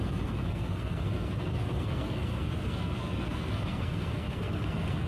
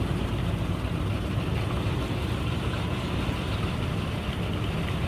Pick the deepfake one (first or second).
first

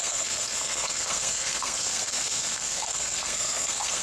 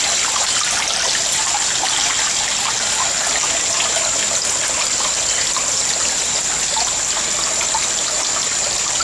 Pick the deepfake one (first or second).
first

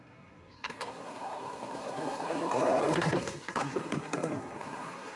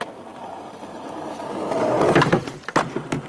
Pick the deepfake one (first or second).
first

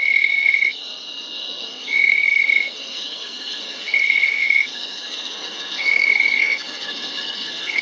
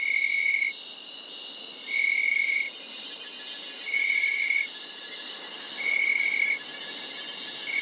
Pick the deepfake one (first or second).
first